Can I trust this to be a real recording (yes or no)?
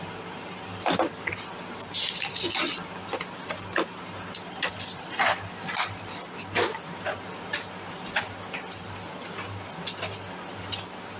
yes